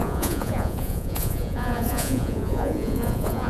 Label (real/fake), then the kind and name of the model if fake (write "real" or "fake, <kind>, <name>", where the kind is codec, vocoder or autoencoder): fake, vocoder, Vocos